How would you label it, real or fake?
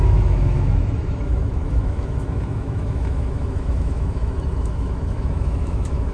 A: fake